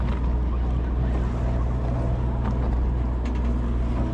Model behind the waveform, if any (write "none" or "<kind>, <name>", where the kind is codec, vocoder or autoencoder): none